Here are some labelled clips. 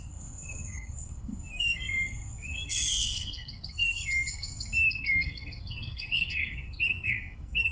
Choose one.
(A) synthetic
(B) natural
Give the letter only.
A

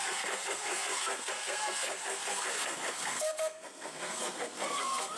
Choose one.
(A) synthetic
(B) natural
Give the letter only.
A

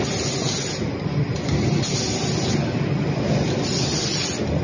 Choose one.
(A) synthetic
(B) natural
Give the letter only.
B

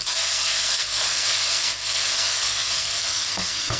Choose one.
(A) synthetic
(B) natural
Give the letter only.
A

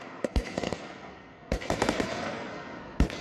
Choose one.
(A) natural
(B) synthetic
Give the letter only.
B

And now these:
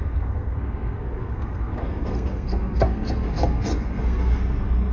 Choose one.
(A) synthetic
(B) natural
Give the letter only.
A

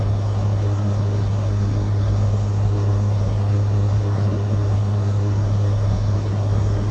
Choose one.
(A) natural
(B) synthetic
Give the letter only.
B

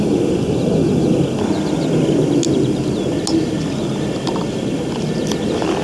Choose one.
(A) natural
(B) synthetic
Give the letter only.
A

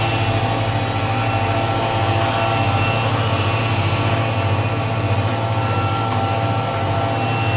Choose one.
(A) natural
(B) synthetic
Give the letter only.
A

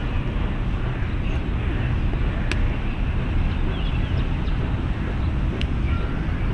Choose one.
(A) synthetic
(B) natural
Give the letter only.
B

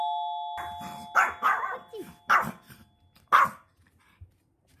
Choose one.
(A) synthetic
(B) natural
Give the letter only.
B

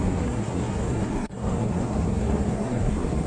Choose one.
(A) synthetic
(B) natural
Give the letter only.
A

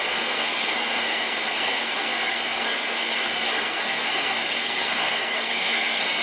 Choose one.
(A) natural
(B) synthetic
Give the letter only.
B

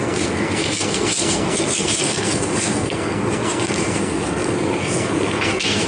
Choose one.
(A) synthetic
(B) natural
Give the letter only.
A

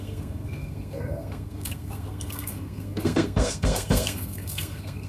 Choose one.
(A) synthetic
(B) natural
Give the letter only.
A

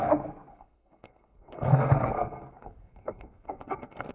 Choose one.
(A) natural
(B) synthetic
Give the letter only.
B